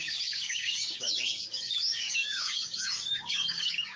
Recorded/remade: remade